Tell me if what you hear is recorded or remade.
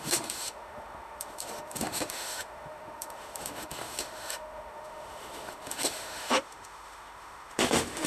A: remade